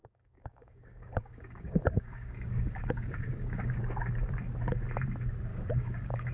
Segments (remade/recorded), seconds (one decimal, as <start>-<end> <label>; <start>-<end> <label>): 0.0-3.8 remade; 3.8-5.5 recorded; 5.5-6.3 remade